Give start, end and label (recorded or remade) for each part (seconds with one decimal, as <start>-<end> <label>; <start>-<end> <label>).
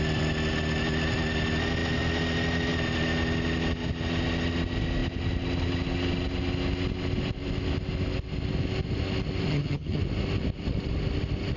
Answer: 0.0-9.5 recorded; 9.5-10.0 remade; 10.0-11.6 recorded